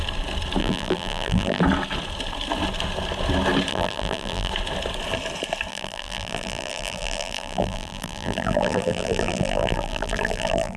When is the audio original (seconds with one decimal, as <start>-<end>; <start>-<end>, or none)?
0.0-0.6; 1.6-3.7; 4.5-5.7